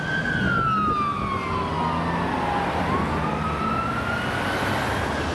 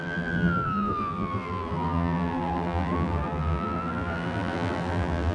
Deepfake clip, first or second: second